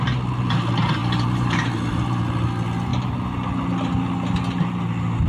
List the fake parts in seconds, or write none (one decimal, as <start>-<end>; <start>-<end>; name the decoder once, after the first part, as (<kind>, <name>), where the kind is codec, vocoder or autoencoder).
1.0-2.2 (vocoder, BigVGAN v2)